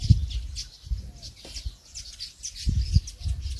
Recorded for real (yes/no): yes